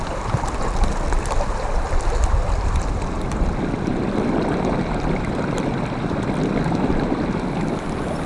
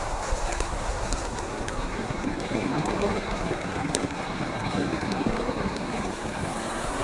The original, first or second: first